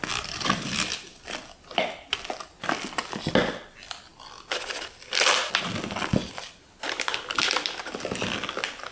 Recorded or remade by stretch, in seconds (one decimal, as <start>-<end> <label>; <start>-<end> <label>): 0.0-8.9 recorded